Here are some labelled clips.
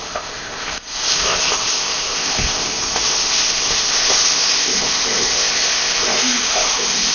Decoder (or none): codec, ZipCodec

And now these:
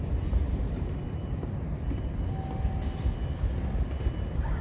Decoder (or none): none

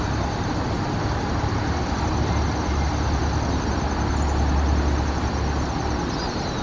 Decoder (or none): none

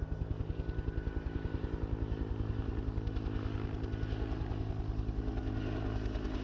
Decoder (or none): none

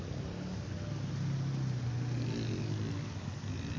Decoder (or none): none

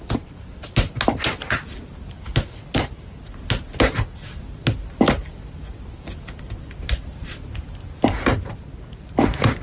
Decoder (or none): none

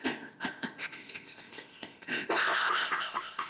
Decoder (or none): codec, ZipCodec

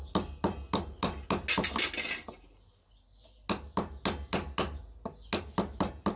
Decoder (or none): none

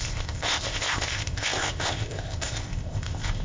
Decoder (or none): codec, ZipCodec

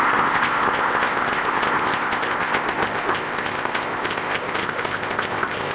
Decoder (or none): codec, ZipCodec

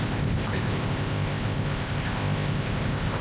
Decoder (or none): codec, ZipCodec